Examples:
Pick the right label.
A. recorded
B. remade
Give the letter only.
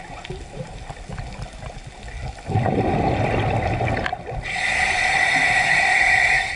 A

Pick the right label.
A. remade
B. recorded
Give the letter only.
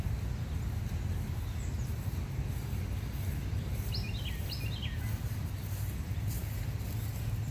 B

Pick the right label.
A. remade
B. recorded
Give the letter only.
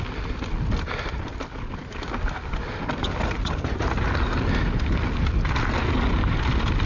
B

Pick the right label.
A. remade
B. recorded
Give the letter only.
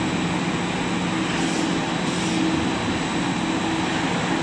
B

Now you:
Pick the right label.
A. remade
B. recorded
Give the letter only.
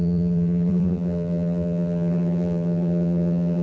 A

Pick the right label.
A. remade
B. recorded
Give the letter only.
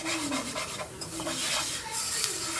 A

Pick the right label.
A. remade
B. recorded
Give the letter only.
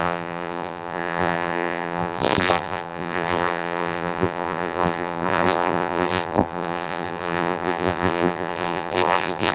A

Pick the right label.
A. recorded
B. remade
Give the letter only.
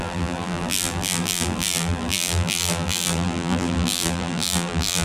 B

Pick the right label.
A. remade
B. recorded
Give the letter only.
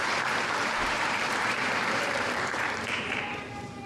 A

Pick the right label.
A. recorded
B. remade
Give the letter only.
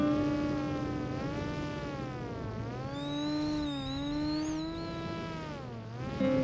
A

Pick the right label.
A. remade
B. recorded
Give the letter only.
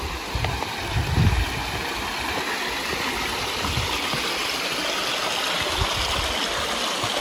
B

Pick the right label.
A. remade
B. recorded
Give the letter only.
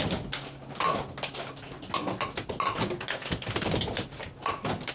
B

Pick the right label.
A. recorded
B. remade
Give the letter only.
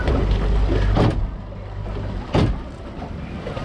A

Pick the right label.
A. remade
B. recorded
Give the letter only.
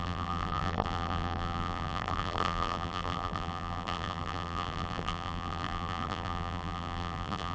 A